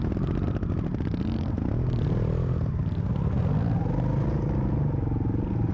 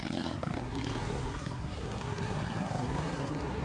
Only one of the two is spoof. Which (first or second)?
second